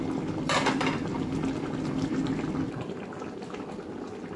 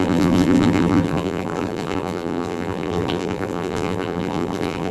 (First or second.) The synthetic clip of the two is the second